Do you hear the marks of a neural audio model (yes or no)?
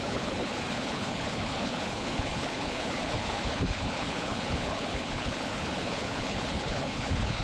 yes